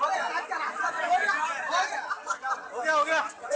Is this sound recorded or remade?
recorded